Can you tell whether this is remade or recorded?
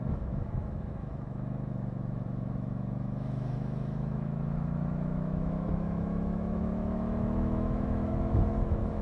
remade